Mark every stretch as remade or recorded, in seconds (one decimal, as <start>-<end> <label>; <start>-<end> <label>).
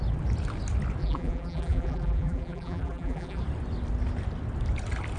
0.0-1.0 recorded; 1.0-3.4 remade; 3.4-5.2 recorded